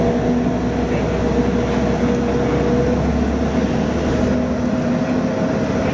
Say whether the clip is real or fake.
real